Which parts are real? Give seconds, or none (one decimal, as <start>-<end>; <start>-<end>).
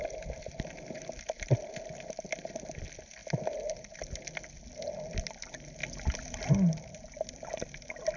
0.0-8.2